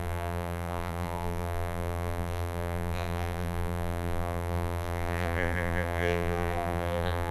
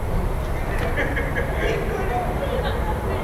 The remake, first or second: first